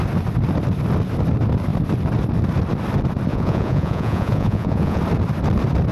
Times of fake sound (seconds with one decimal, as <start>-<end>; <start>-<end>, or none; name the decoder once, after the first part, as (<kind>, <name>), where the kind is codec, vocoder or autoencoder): 3.3-5.0 (vocoder, Vocos)